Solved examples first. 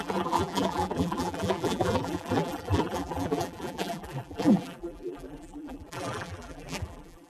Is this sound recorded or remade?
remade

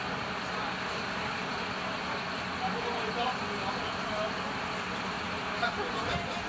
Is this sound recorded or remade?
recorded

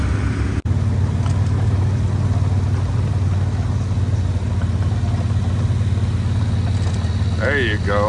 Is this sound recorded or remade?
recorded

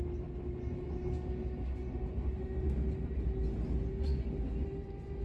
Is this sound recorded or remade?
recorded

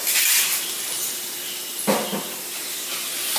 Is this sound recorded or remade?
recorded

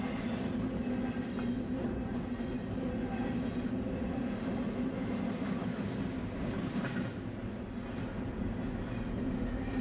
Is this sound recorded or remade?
recorded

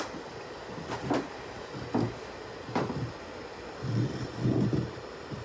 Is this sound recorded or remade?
recorded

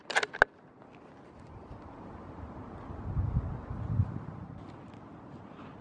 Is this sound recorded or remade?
recorded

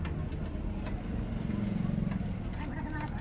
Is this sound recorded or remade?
recorded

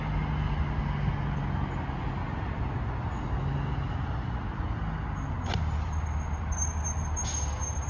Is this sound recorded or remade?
recorded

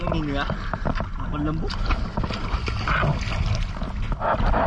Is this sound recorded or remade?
recorded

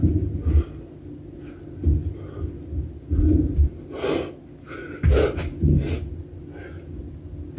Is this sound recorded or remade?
recorded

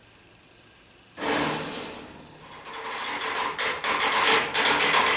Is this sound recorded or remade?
recorded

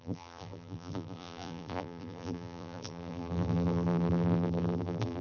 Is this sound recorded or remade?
remade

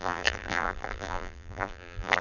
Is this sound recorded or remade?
remade